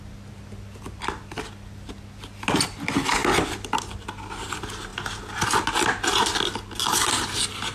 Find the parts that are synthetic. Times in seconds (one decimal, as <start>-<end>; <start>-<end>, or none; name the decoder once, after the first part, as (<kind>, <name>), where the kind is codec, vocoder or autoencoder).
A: none